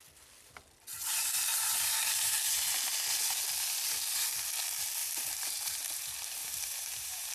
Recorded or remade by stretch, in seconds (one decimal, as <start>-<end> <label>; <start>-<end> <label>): 0.0-1.5 recorded; 1.5-2.9 remade; 2.9-5.0 recorded; 5.0-6.0 remade; 6.0-6.4 recorded; 6.4-7.3 remade